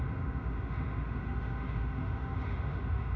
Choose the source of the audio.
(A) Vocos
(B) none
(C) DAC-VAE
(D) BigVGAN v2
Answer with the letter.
C